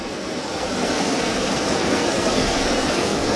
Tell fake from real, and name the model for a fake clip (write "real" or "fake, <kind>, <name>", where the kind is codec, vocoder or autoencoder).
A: fake, codec, SNAC